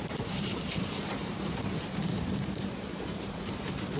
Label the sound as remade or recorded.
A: remade